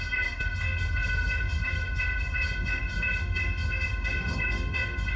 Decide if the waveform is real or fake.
fake